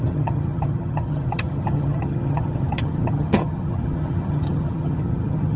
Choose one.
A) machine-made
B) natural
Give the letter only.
A